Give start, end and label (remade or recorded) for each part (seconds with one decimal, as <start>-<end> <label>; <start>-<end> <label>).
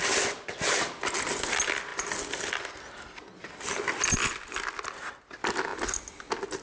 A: 0.0-6.6 recorded